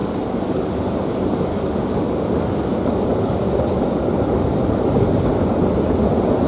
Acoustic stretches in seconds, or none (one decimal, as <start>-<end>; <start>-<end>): 0.8-1.5; 5.4-6.5

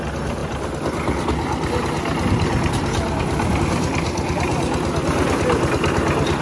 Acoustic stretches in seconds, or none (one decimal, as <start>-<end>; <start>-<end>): 0.0-6.4

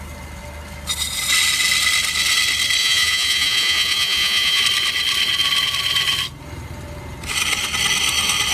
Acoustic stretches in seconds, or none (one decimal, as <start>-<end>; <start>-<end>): 0.0-2.8; 4.6-8.5

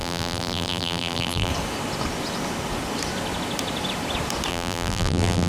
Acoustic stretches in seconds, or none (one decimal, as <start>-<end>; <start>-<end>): 1.5-4.5

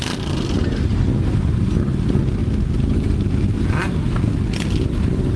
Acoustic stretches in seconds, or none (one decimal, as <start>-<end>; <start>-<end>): 0.0-5.4

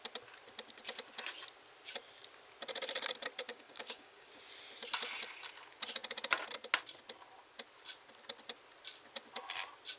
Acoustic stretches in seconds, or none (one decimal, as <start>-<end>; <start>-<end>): 0.0-3.5; 4.3-10.0

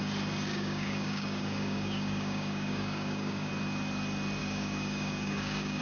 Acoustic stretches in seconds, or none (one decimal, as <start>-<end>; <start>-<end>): 0.0-0.5; 3.5-4.4

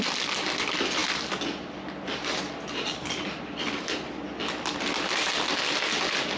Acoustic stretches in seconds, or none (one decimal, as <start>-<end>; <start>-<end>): 0.0-6.4